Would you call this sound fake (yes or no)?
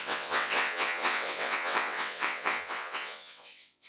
yes